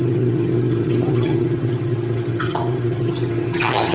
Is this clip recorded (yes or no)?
no